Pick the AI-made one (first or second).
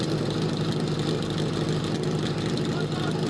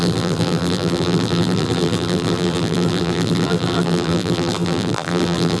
second